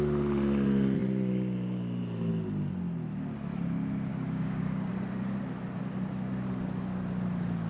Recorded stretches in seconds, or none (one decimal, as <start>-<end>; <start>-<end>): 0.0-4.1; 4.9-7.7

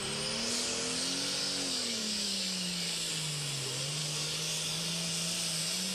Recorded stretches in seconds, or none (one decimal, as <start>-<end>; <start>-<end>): 0.0-1.4; 3.1-4.0; 4.8-5.9

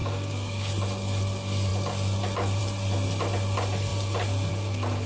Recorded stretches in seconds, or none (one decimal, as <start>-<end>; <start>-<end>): 0.7-5.1

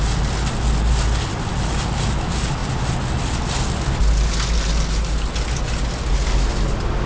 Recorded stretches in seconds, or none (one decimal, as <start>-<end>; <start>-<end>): 0.0-7.1

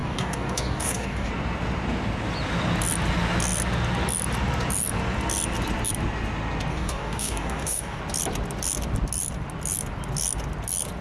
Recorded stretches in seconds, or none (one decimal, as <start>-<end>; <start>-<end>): 1.3-6.7; 8.0-11.0

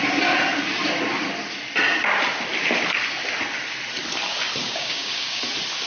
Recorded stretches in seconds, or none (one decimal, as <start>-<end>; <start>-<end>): 0.0-4.6; 5.4-5.9

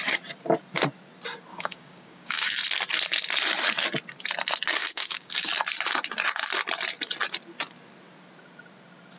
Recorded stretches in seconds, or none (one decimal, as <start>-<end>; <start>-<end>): 0.0-1.5; 2.5-4.8; 5.5-9.2

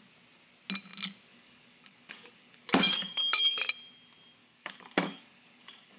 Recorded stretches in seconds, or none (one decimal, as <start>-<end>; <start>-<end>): 0.0-1.3; 3.5-4.4